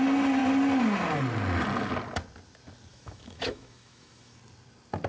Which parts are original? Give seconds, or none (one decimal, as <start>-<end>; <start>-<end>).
0.0-2.9; 4.4-5.1